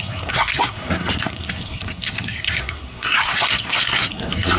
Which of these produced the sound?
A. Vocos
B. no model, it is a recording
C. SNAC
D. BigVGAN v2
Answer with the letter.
C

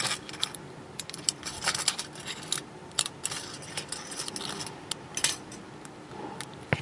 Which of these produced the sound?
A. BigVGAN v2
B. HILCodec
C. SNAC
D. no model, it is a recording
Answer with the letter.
D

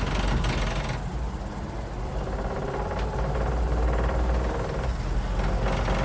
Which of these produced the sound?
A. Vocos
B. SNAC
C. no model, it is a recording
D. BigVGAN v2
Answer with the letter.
C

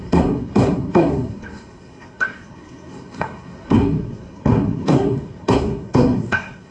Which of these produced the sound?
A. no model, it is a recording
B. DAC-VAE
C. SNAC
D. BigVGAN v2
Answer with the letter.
C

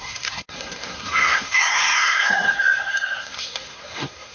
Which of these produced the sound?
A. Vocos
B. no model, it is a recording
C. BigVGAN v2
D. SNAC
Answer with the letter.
D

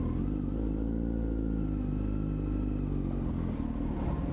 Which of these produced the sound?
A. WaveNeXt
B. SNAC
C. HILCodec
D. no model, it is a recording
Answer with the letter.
D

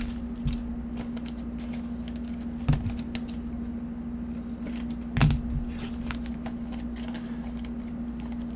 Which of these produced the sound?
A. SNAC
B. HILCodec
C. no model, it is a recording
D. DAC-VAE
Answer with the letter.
C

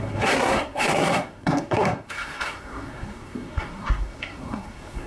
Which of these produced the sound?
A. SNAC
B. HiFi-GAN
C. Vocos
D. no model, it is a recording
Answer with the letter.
A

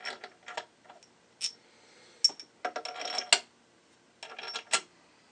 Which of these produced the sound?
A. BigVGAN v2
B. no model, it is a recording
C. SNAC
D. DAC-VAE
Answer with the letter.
B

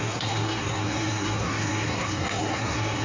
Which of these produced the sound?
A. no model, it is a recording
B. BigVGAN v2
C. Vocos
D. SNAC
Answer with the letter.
D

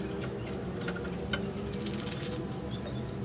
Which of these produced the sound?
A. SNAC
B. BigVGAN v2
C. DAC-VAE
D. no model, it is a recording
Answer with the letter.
D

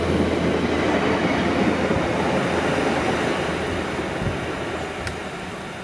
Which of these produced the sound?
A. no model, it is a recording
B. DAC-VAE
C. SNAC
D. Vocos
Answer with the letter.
A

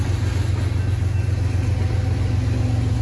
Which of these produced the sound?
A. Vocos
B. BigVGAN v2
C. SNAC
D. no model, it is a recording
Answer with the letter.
D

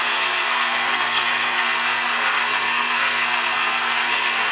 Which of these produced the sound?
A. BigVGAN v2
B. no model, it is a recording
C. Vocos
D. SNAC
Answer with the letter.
D